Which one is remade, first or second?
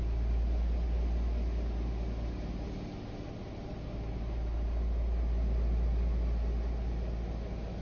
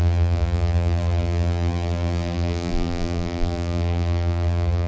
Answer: second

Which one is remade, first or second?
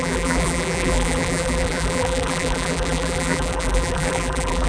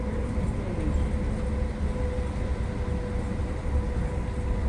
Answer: first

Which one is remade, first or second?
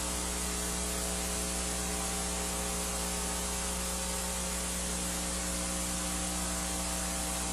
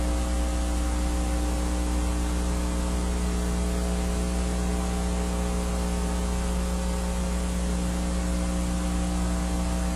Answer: first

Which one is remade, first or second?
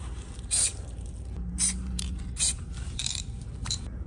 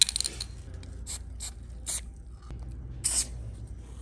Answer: first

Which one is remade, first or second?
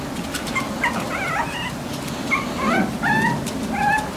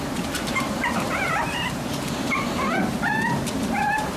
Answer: second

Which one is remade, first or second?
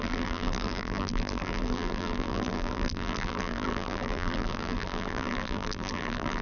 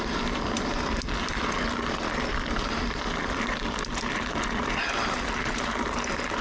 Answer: first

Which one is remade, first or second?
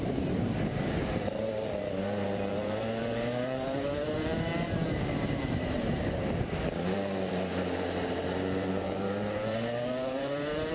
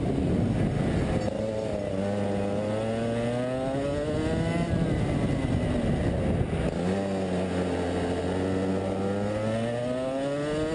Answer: first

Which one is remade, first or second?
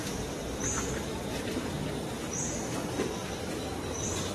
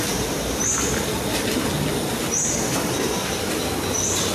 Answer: first